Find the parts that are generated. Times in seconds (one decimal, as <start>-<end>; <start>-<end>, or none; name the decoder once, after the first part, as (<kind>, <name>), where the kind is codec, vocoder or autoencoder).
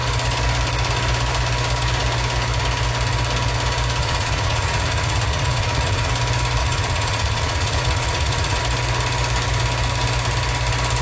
4.0-6.1 (vocoder, Vocos); 6.6-8.6